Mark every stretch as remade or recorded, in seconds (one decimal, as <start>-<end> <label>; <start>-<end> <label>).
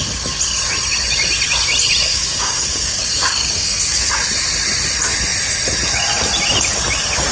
0.0-2.1 recorded; 2.1-4.1 remade; 4.1-7.3 recorded